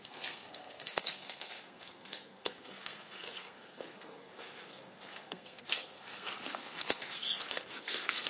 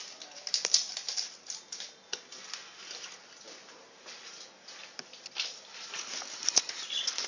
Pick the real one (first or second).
second